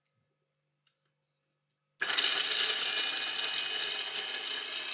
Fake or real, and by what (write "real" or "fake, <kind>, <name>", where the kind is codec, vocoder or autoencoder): real